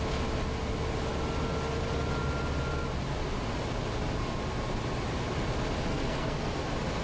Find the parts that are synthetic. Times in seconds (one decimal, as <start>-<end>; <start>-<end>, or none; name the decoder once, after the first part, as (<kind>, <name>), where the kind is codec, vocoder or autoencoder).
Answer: 5.9-6.6 (codec, SNAC)

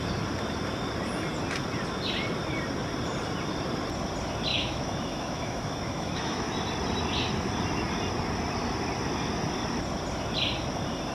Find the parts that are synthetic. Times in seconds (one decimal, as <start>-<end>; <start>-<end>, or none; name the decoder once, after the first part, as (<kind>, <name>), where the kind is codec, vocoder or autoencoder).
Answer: 4.5-6.5 (autoencoder, DAC-VAE)

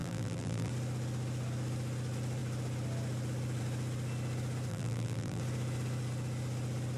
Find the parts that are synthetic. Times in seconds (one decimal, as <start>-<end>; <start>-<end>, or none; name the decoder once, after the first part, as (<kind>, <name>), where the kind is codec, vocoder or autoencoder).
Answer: 0.0-0.7 (vocoder, BigVGAN v2); 4.7-5.4

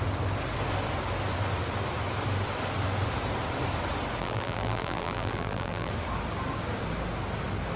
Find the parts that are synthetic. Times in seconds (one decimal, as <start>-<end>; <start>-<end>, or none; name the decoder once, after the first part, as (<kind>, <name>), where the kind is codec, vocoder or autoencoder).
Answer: 4.2-5.9 (vocoder, BigVGAN v2)

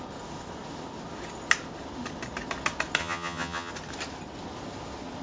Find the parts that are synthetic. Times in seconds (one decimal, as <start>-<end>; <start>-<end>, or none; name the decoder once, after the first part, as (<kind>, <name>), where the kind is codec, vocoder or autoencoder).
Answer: 3.0-3.7 (vocoder, HiFi-GAN)

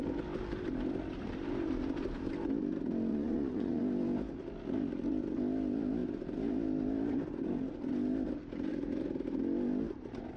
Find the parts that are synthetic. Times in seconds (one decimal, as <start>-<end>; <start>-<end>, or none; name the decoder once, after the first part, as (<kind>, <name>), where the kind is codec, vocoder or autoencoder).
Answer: 3.1-3.8 (vocoder, Vocos)

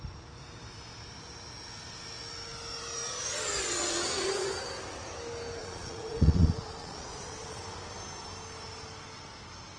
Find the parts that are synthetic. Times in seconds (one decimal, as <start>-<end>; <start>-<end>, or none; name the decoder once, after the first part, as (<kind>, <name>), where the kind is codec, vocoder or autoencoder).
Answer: 3.8-4.6 (vocoder, Vocos); 5.6-7.6

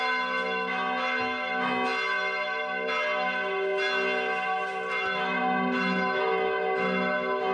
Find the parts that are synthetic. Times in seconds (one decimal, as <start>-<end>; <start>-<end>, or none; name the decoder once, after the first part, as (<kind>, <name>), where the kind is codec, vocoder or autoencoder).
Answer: none